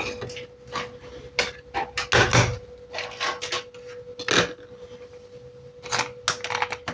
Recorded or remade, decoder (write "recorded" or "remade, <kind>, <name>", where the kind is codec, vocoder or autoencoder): recorded